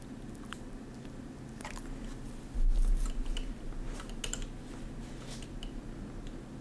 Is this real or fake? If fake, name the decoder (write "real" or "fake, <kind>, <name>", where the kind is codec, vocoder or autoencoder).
real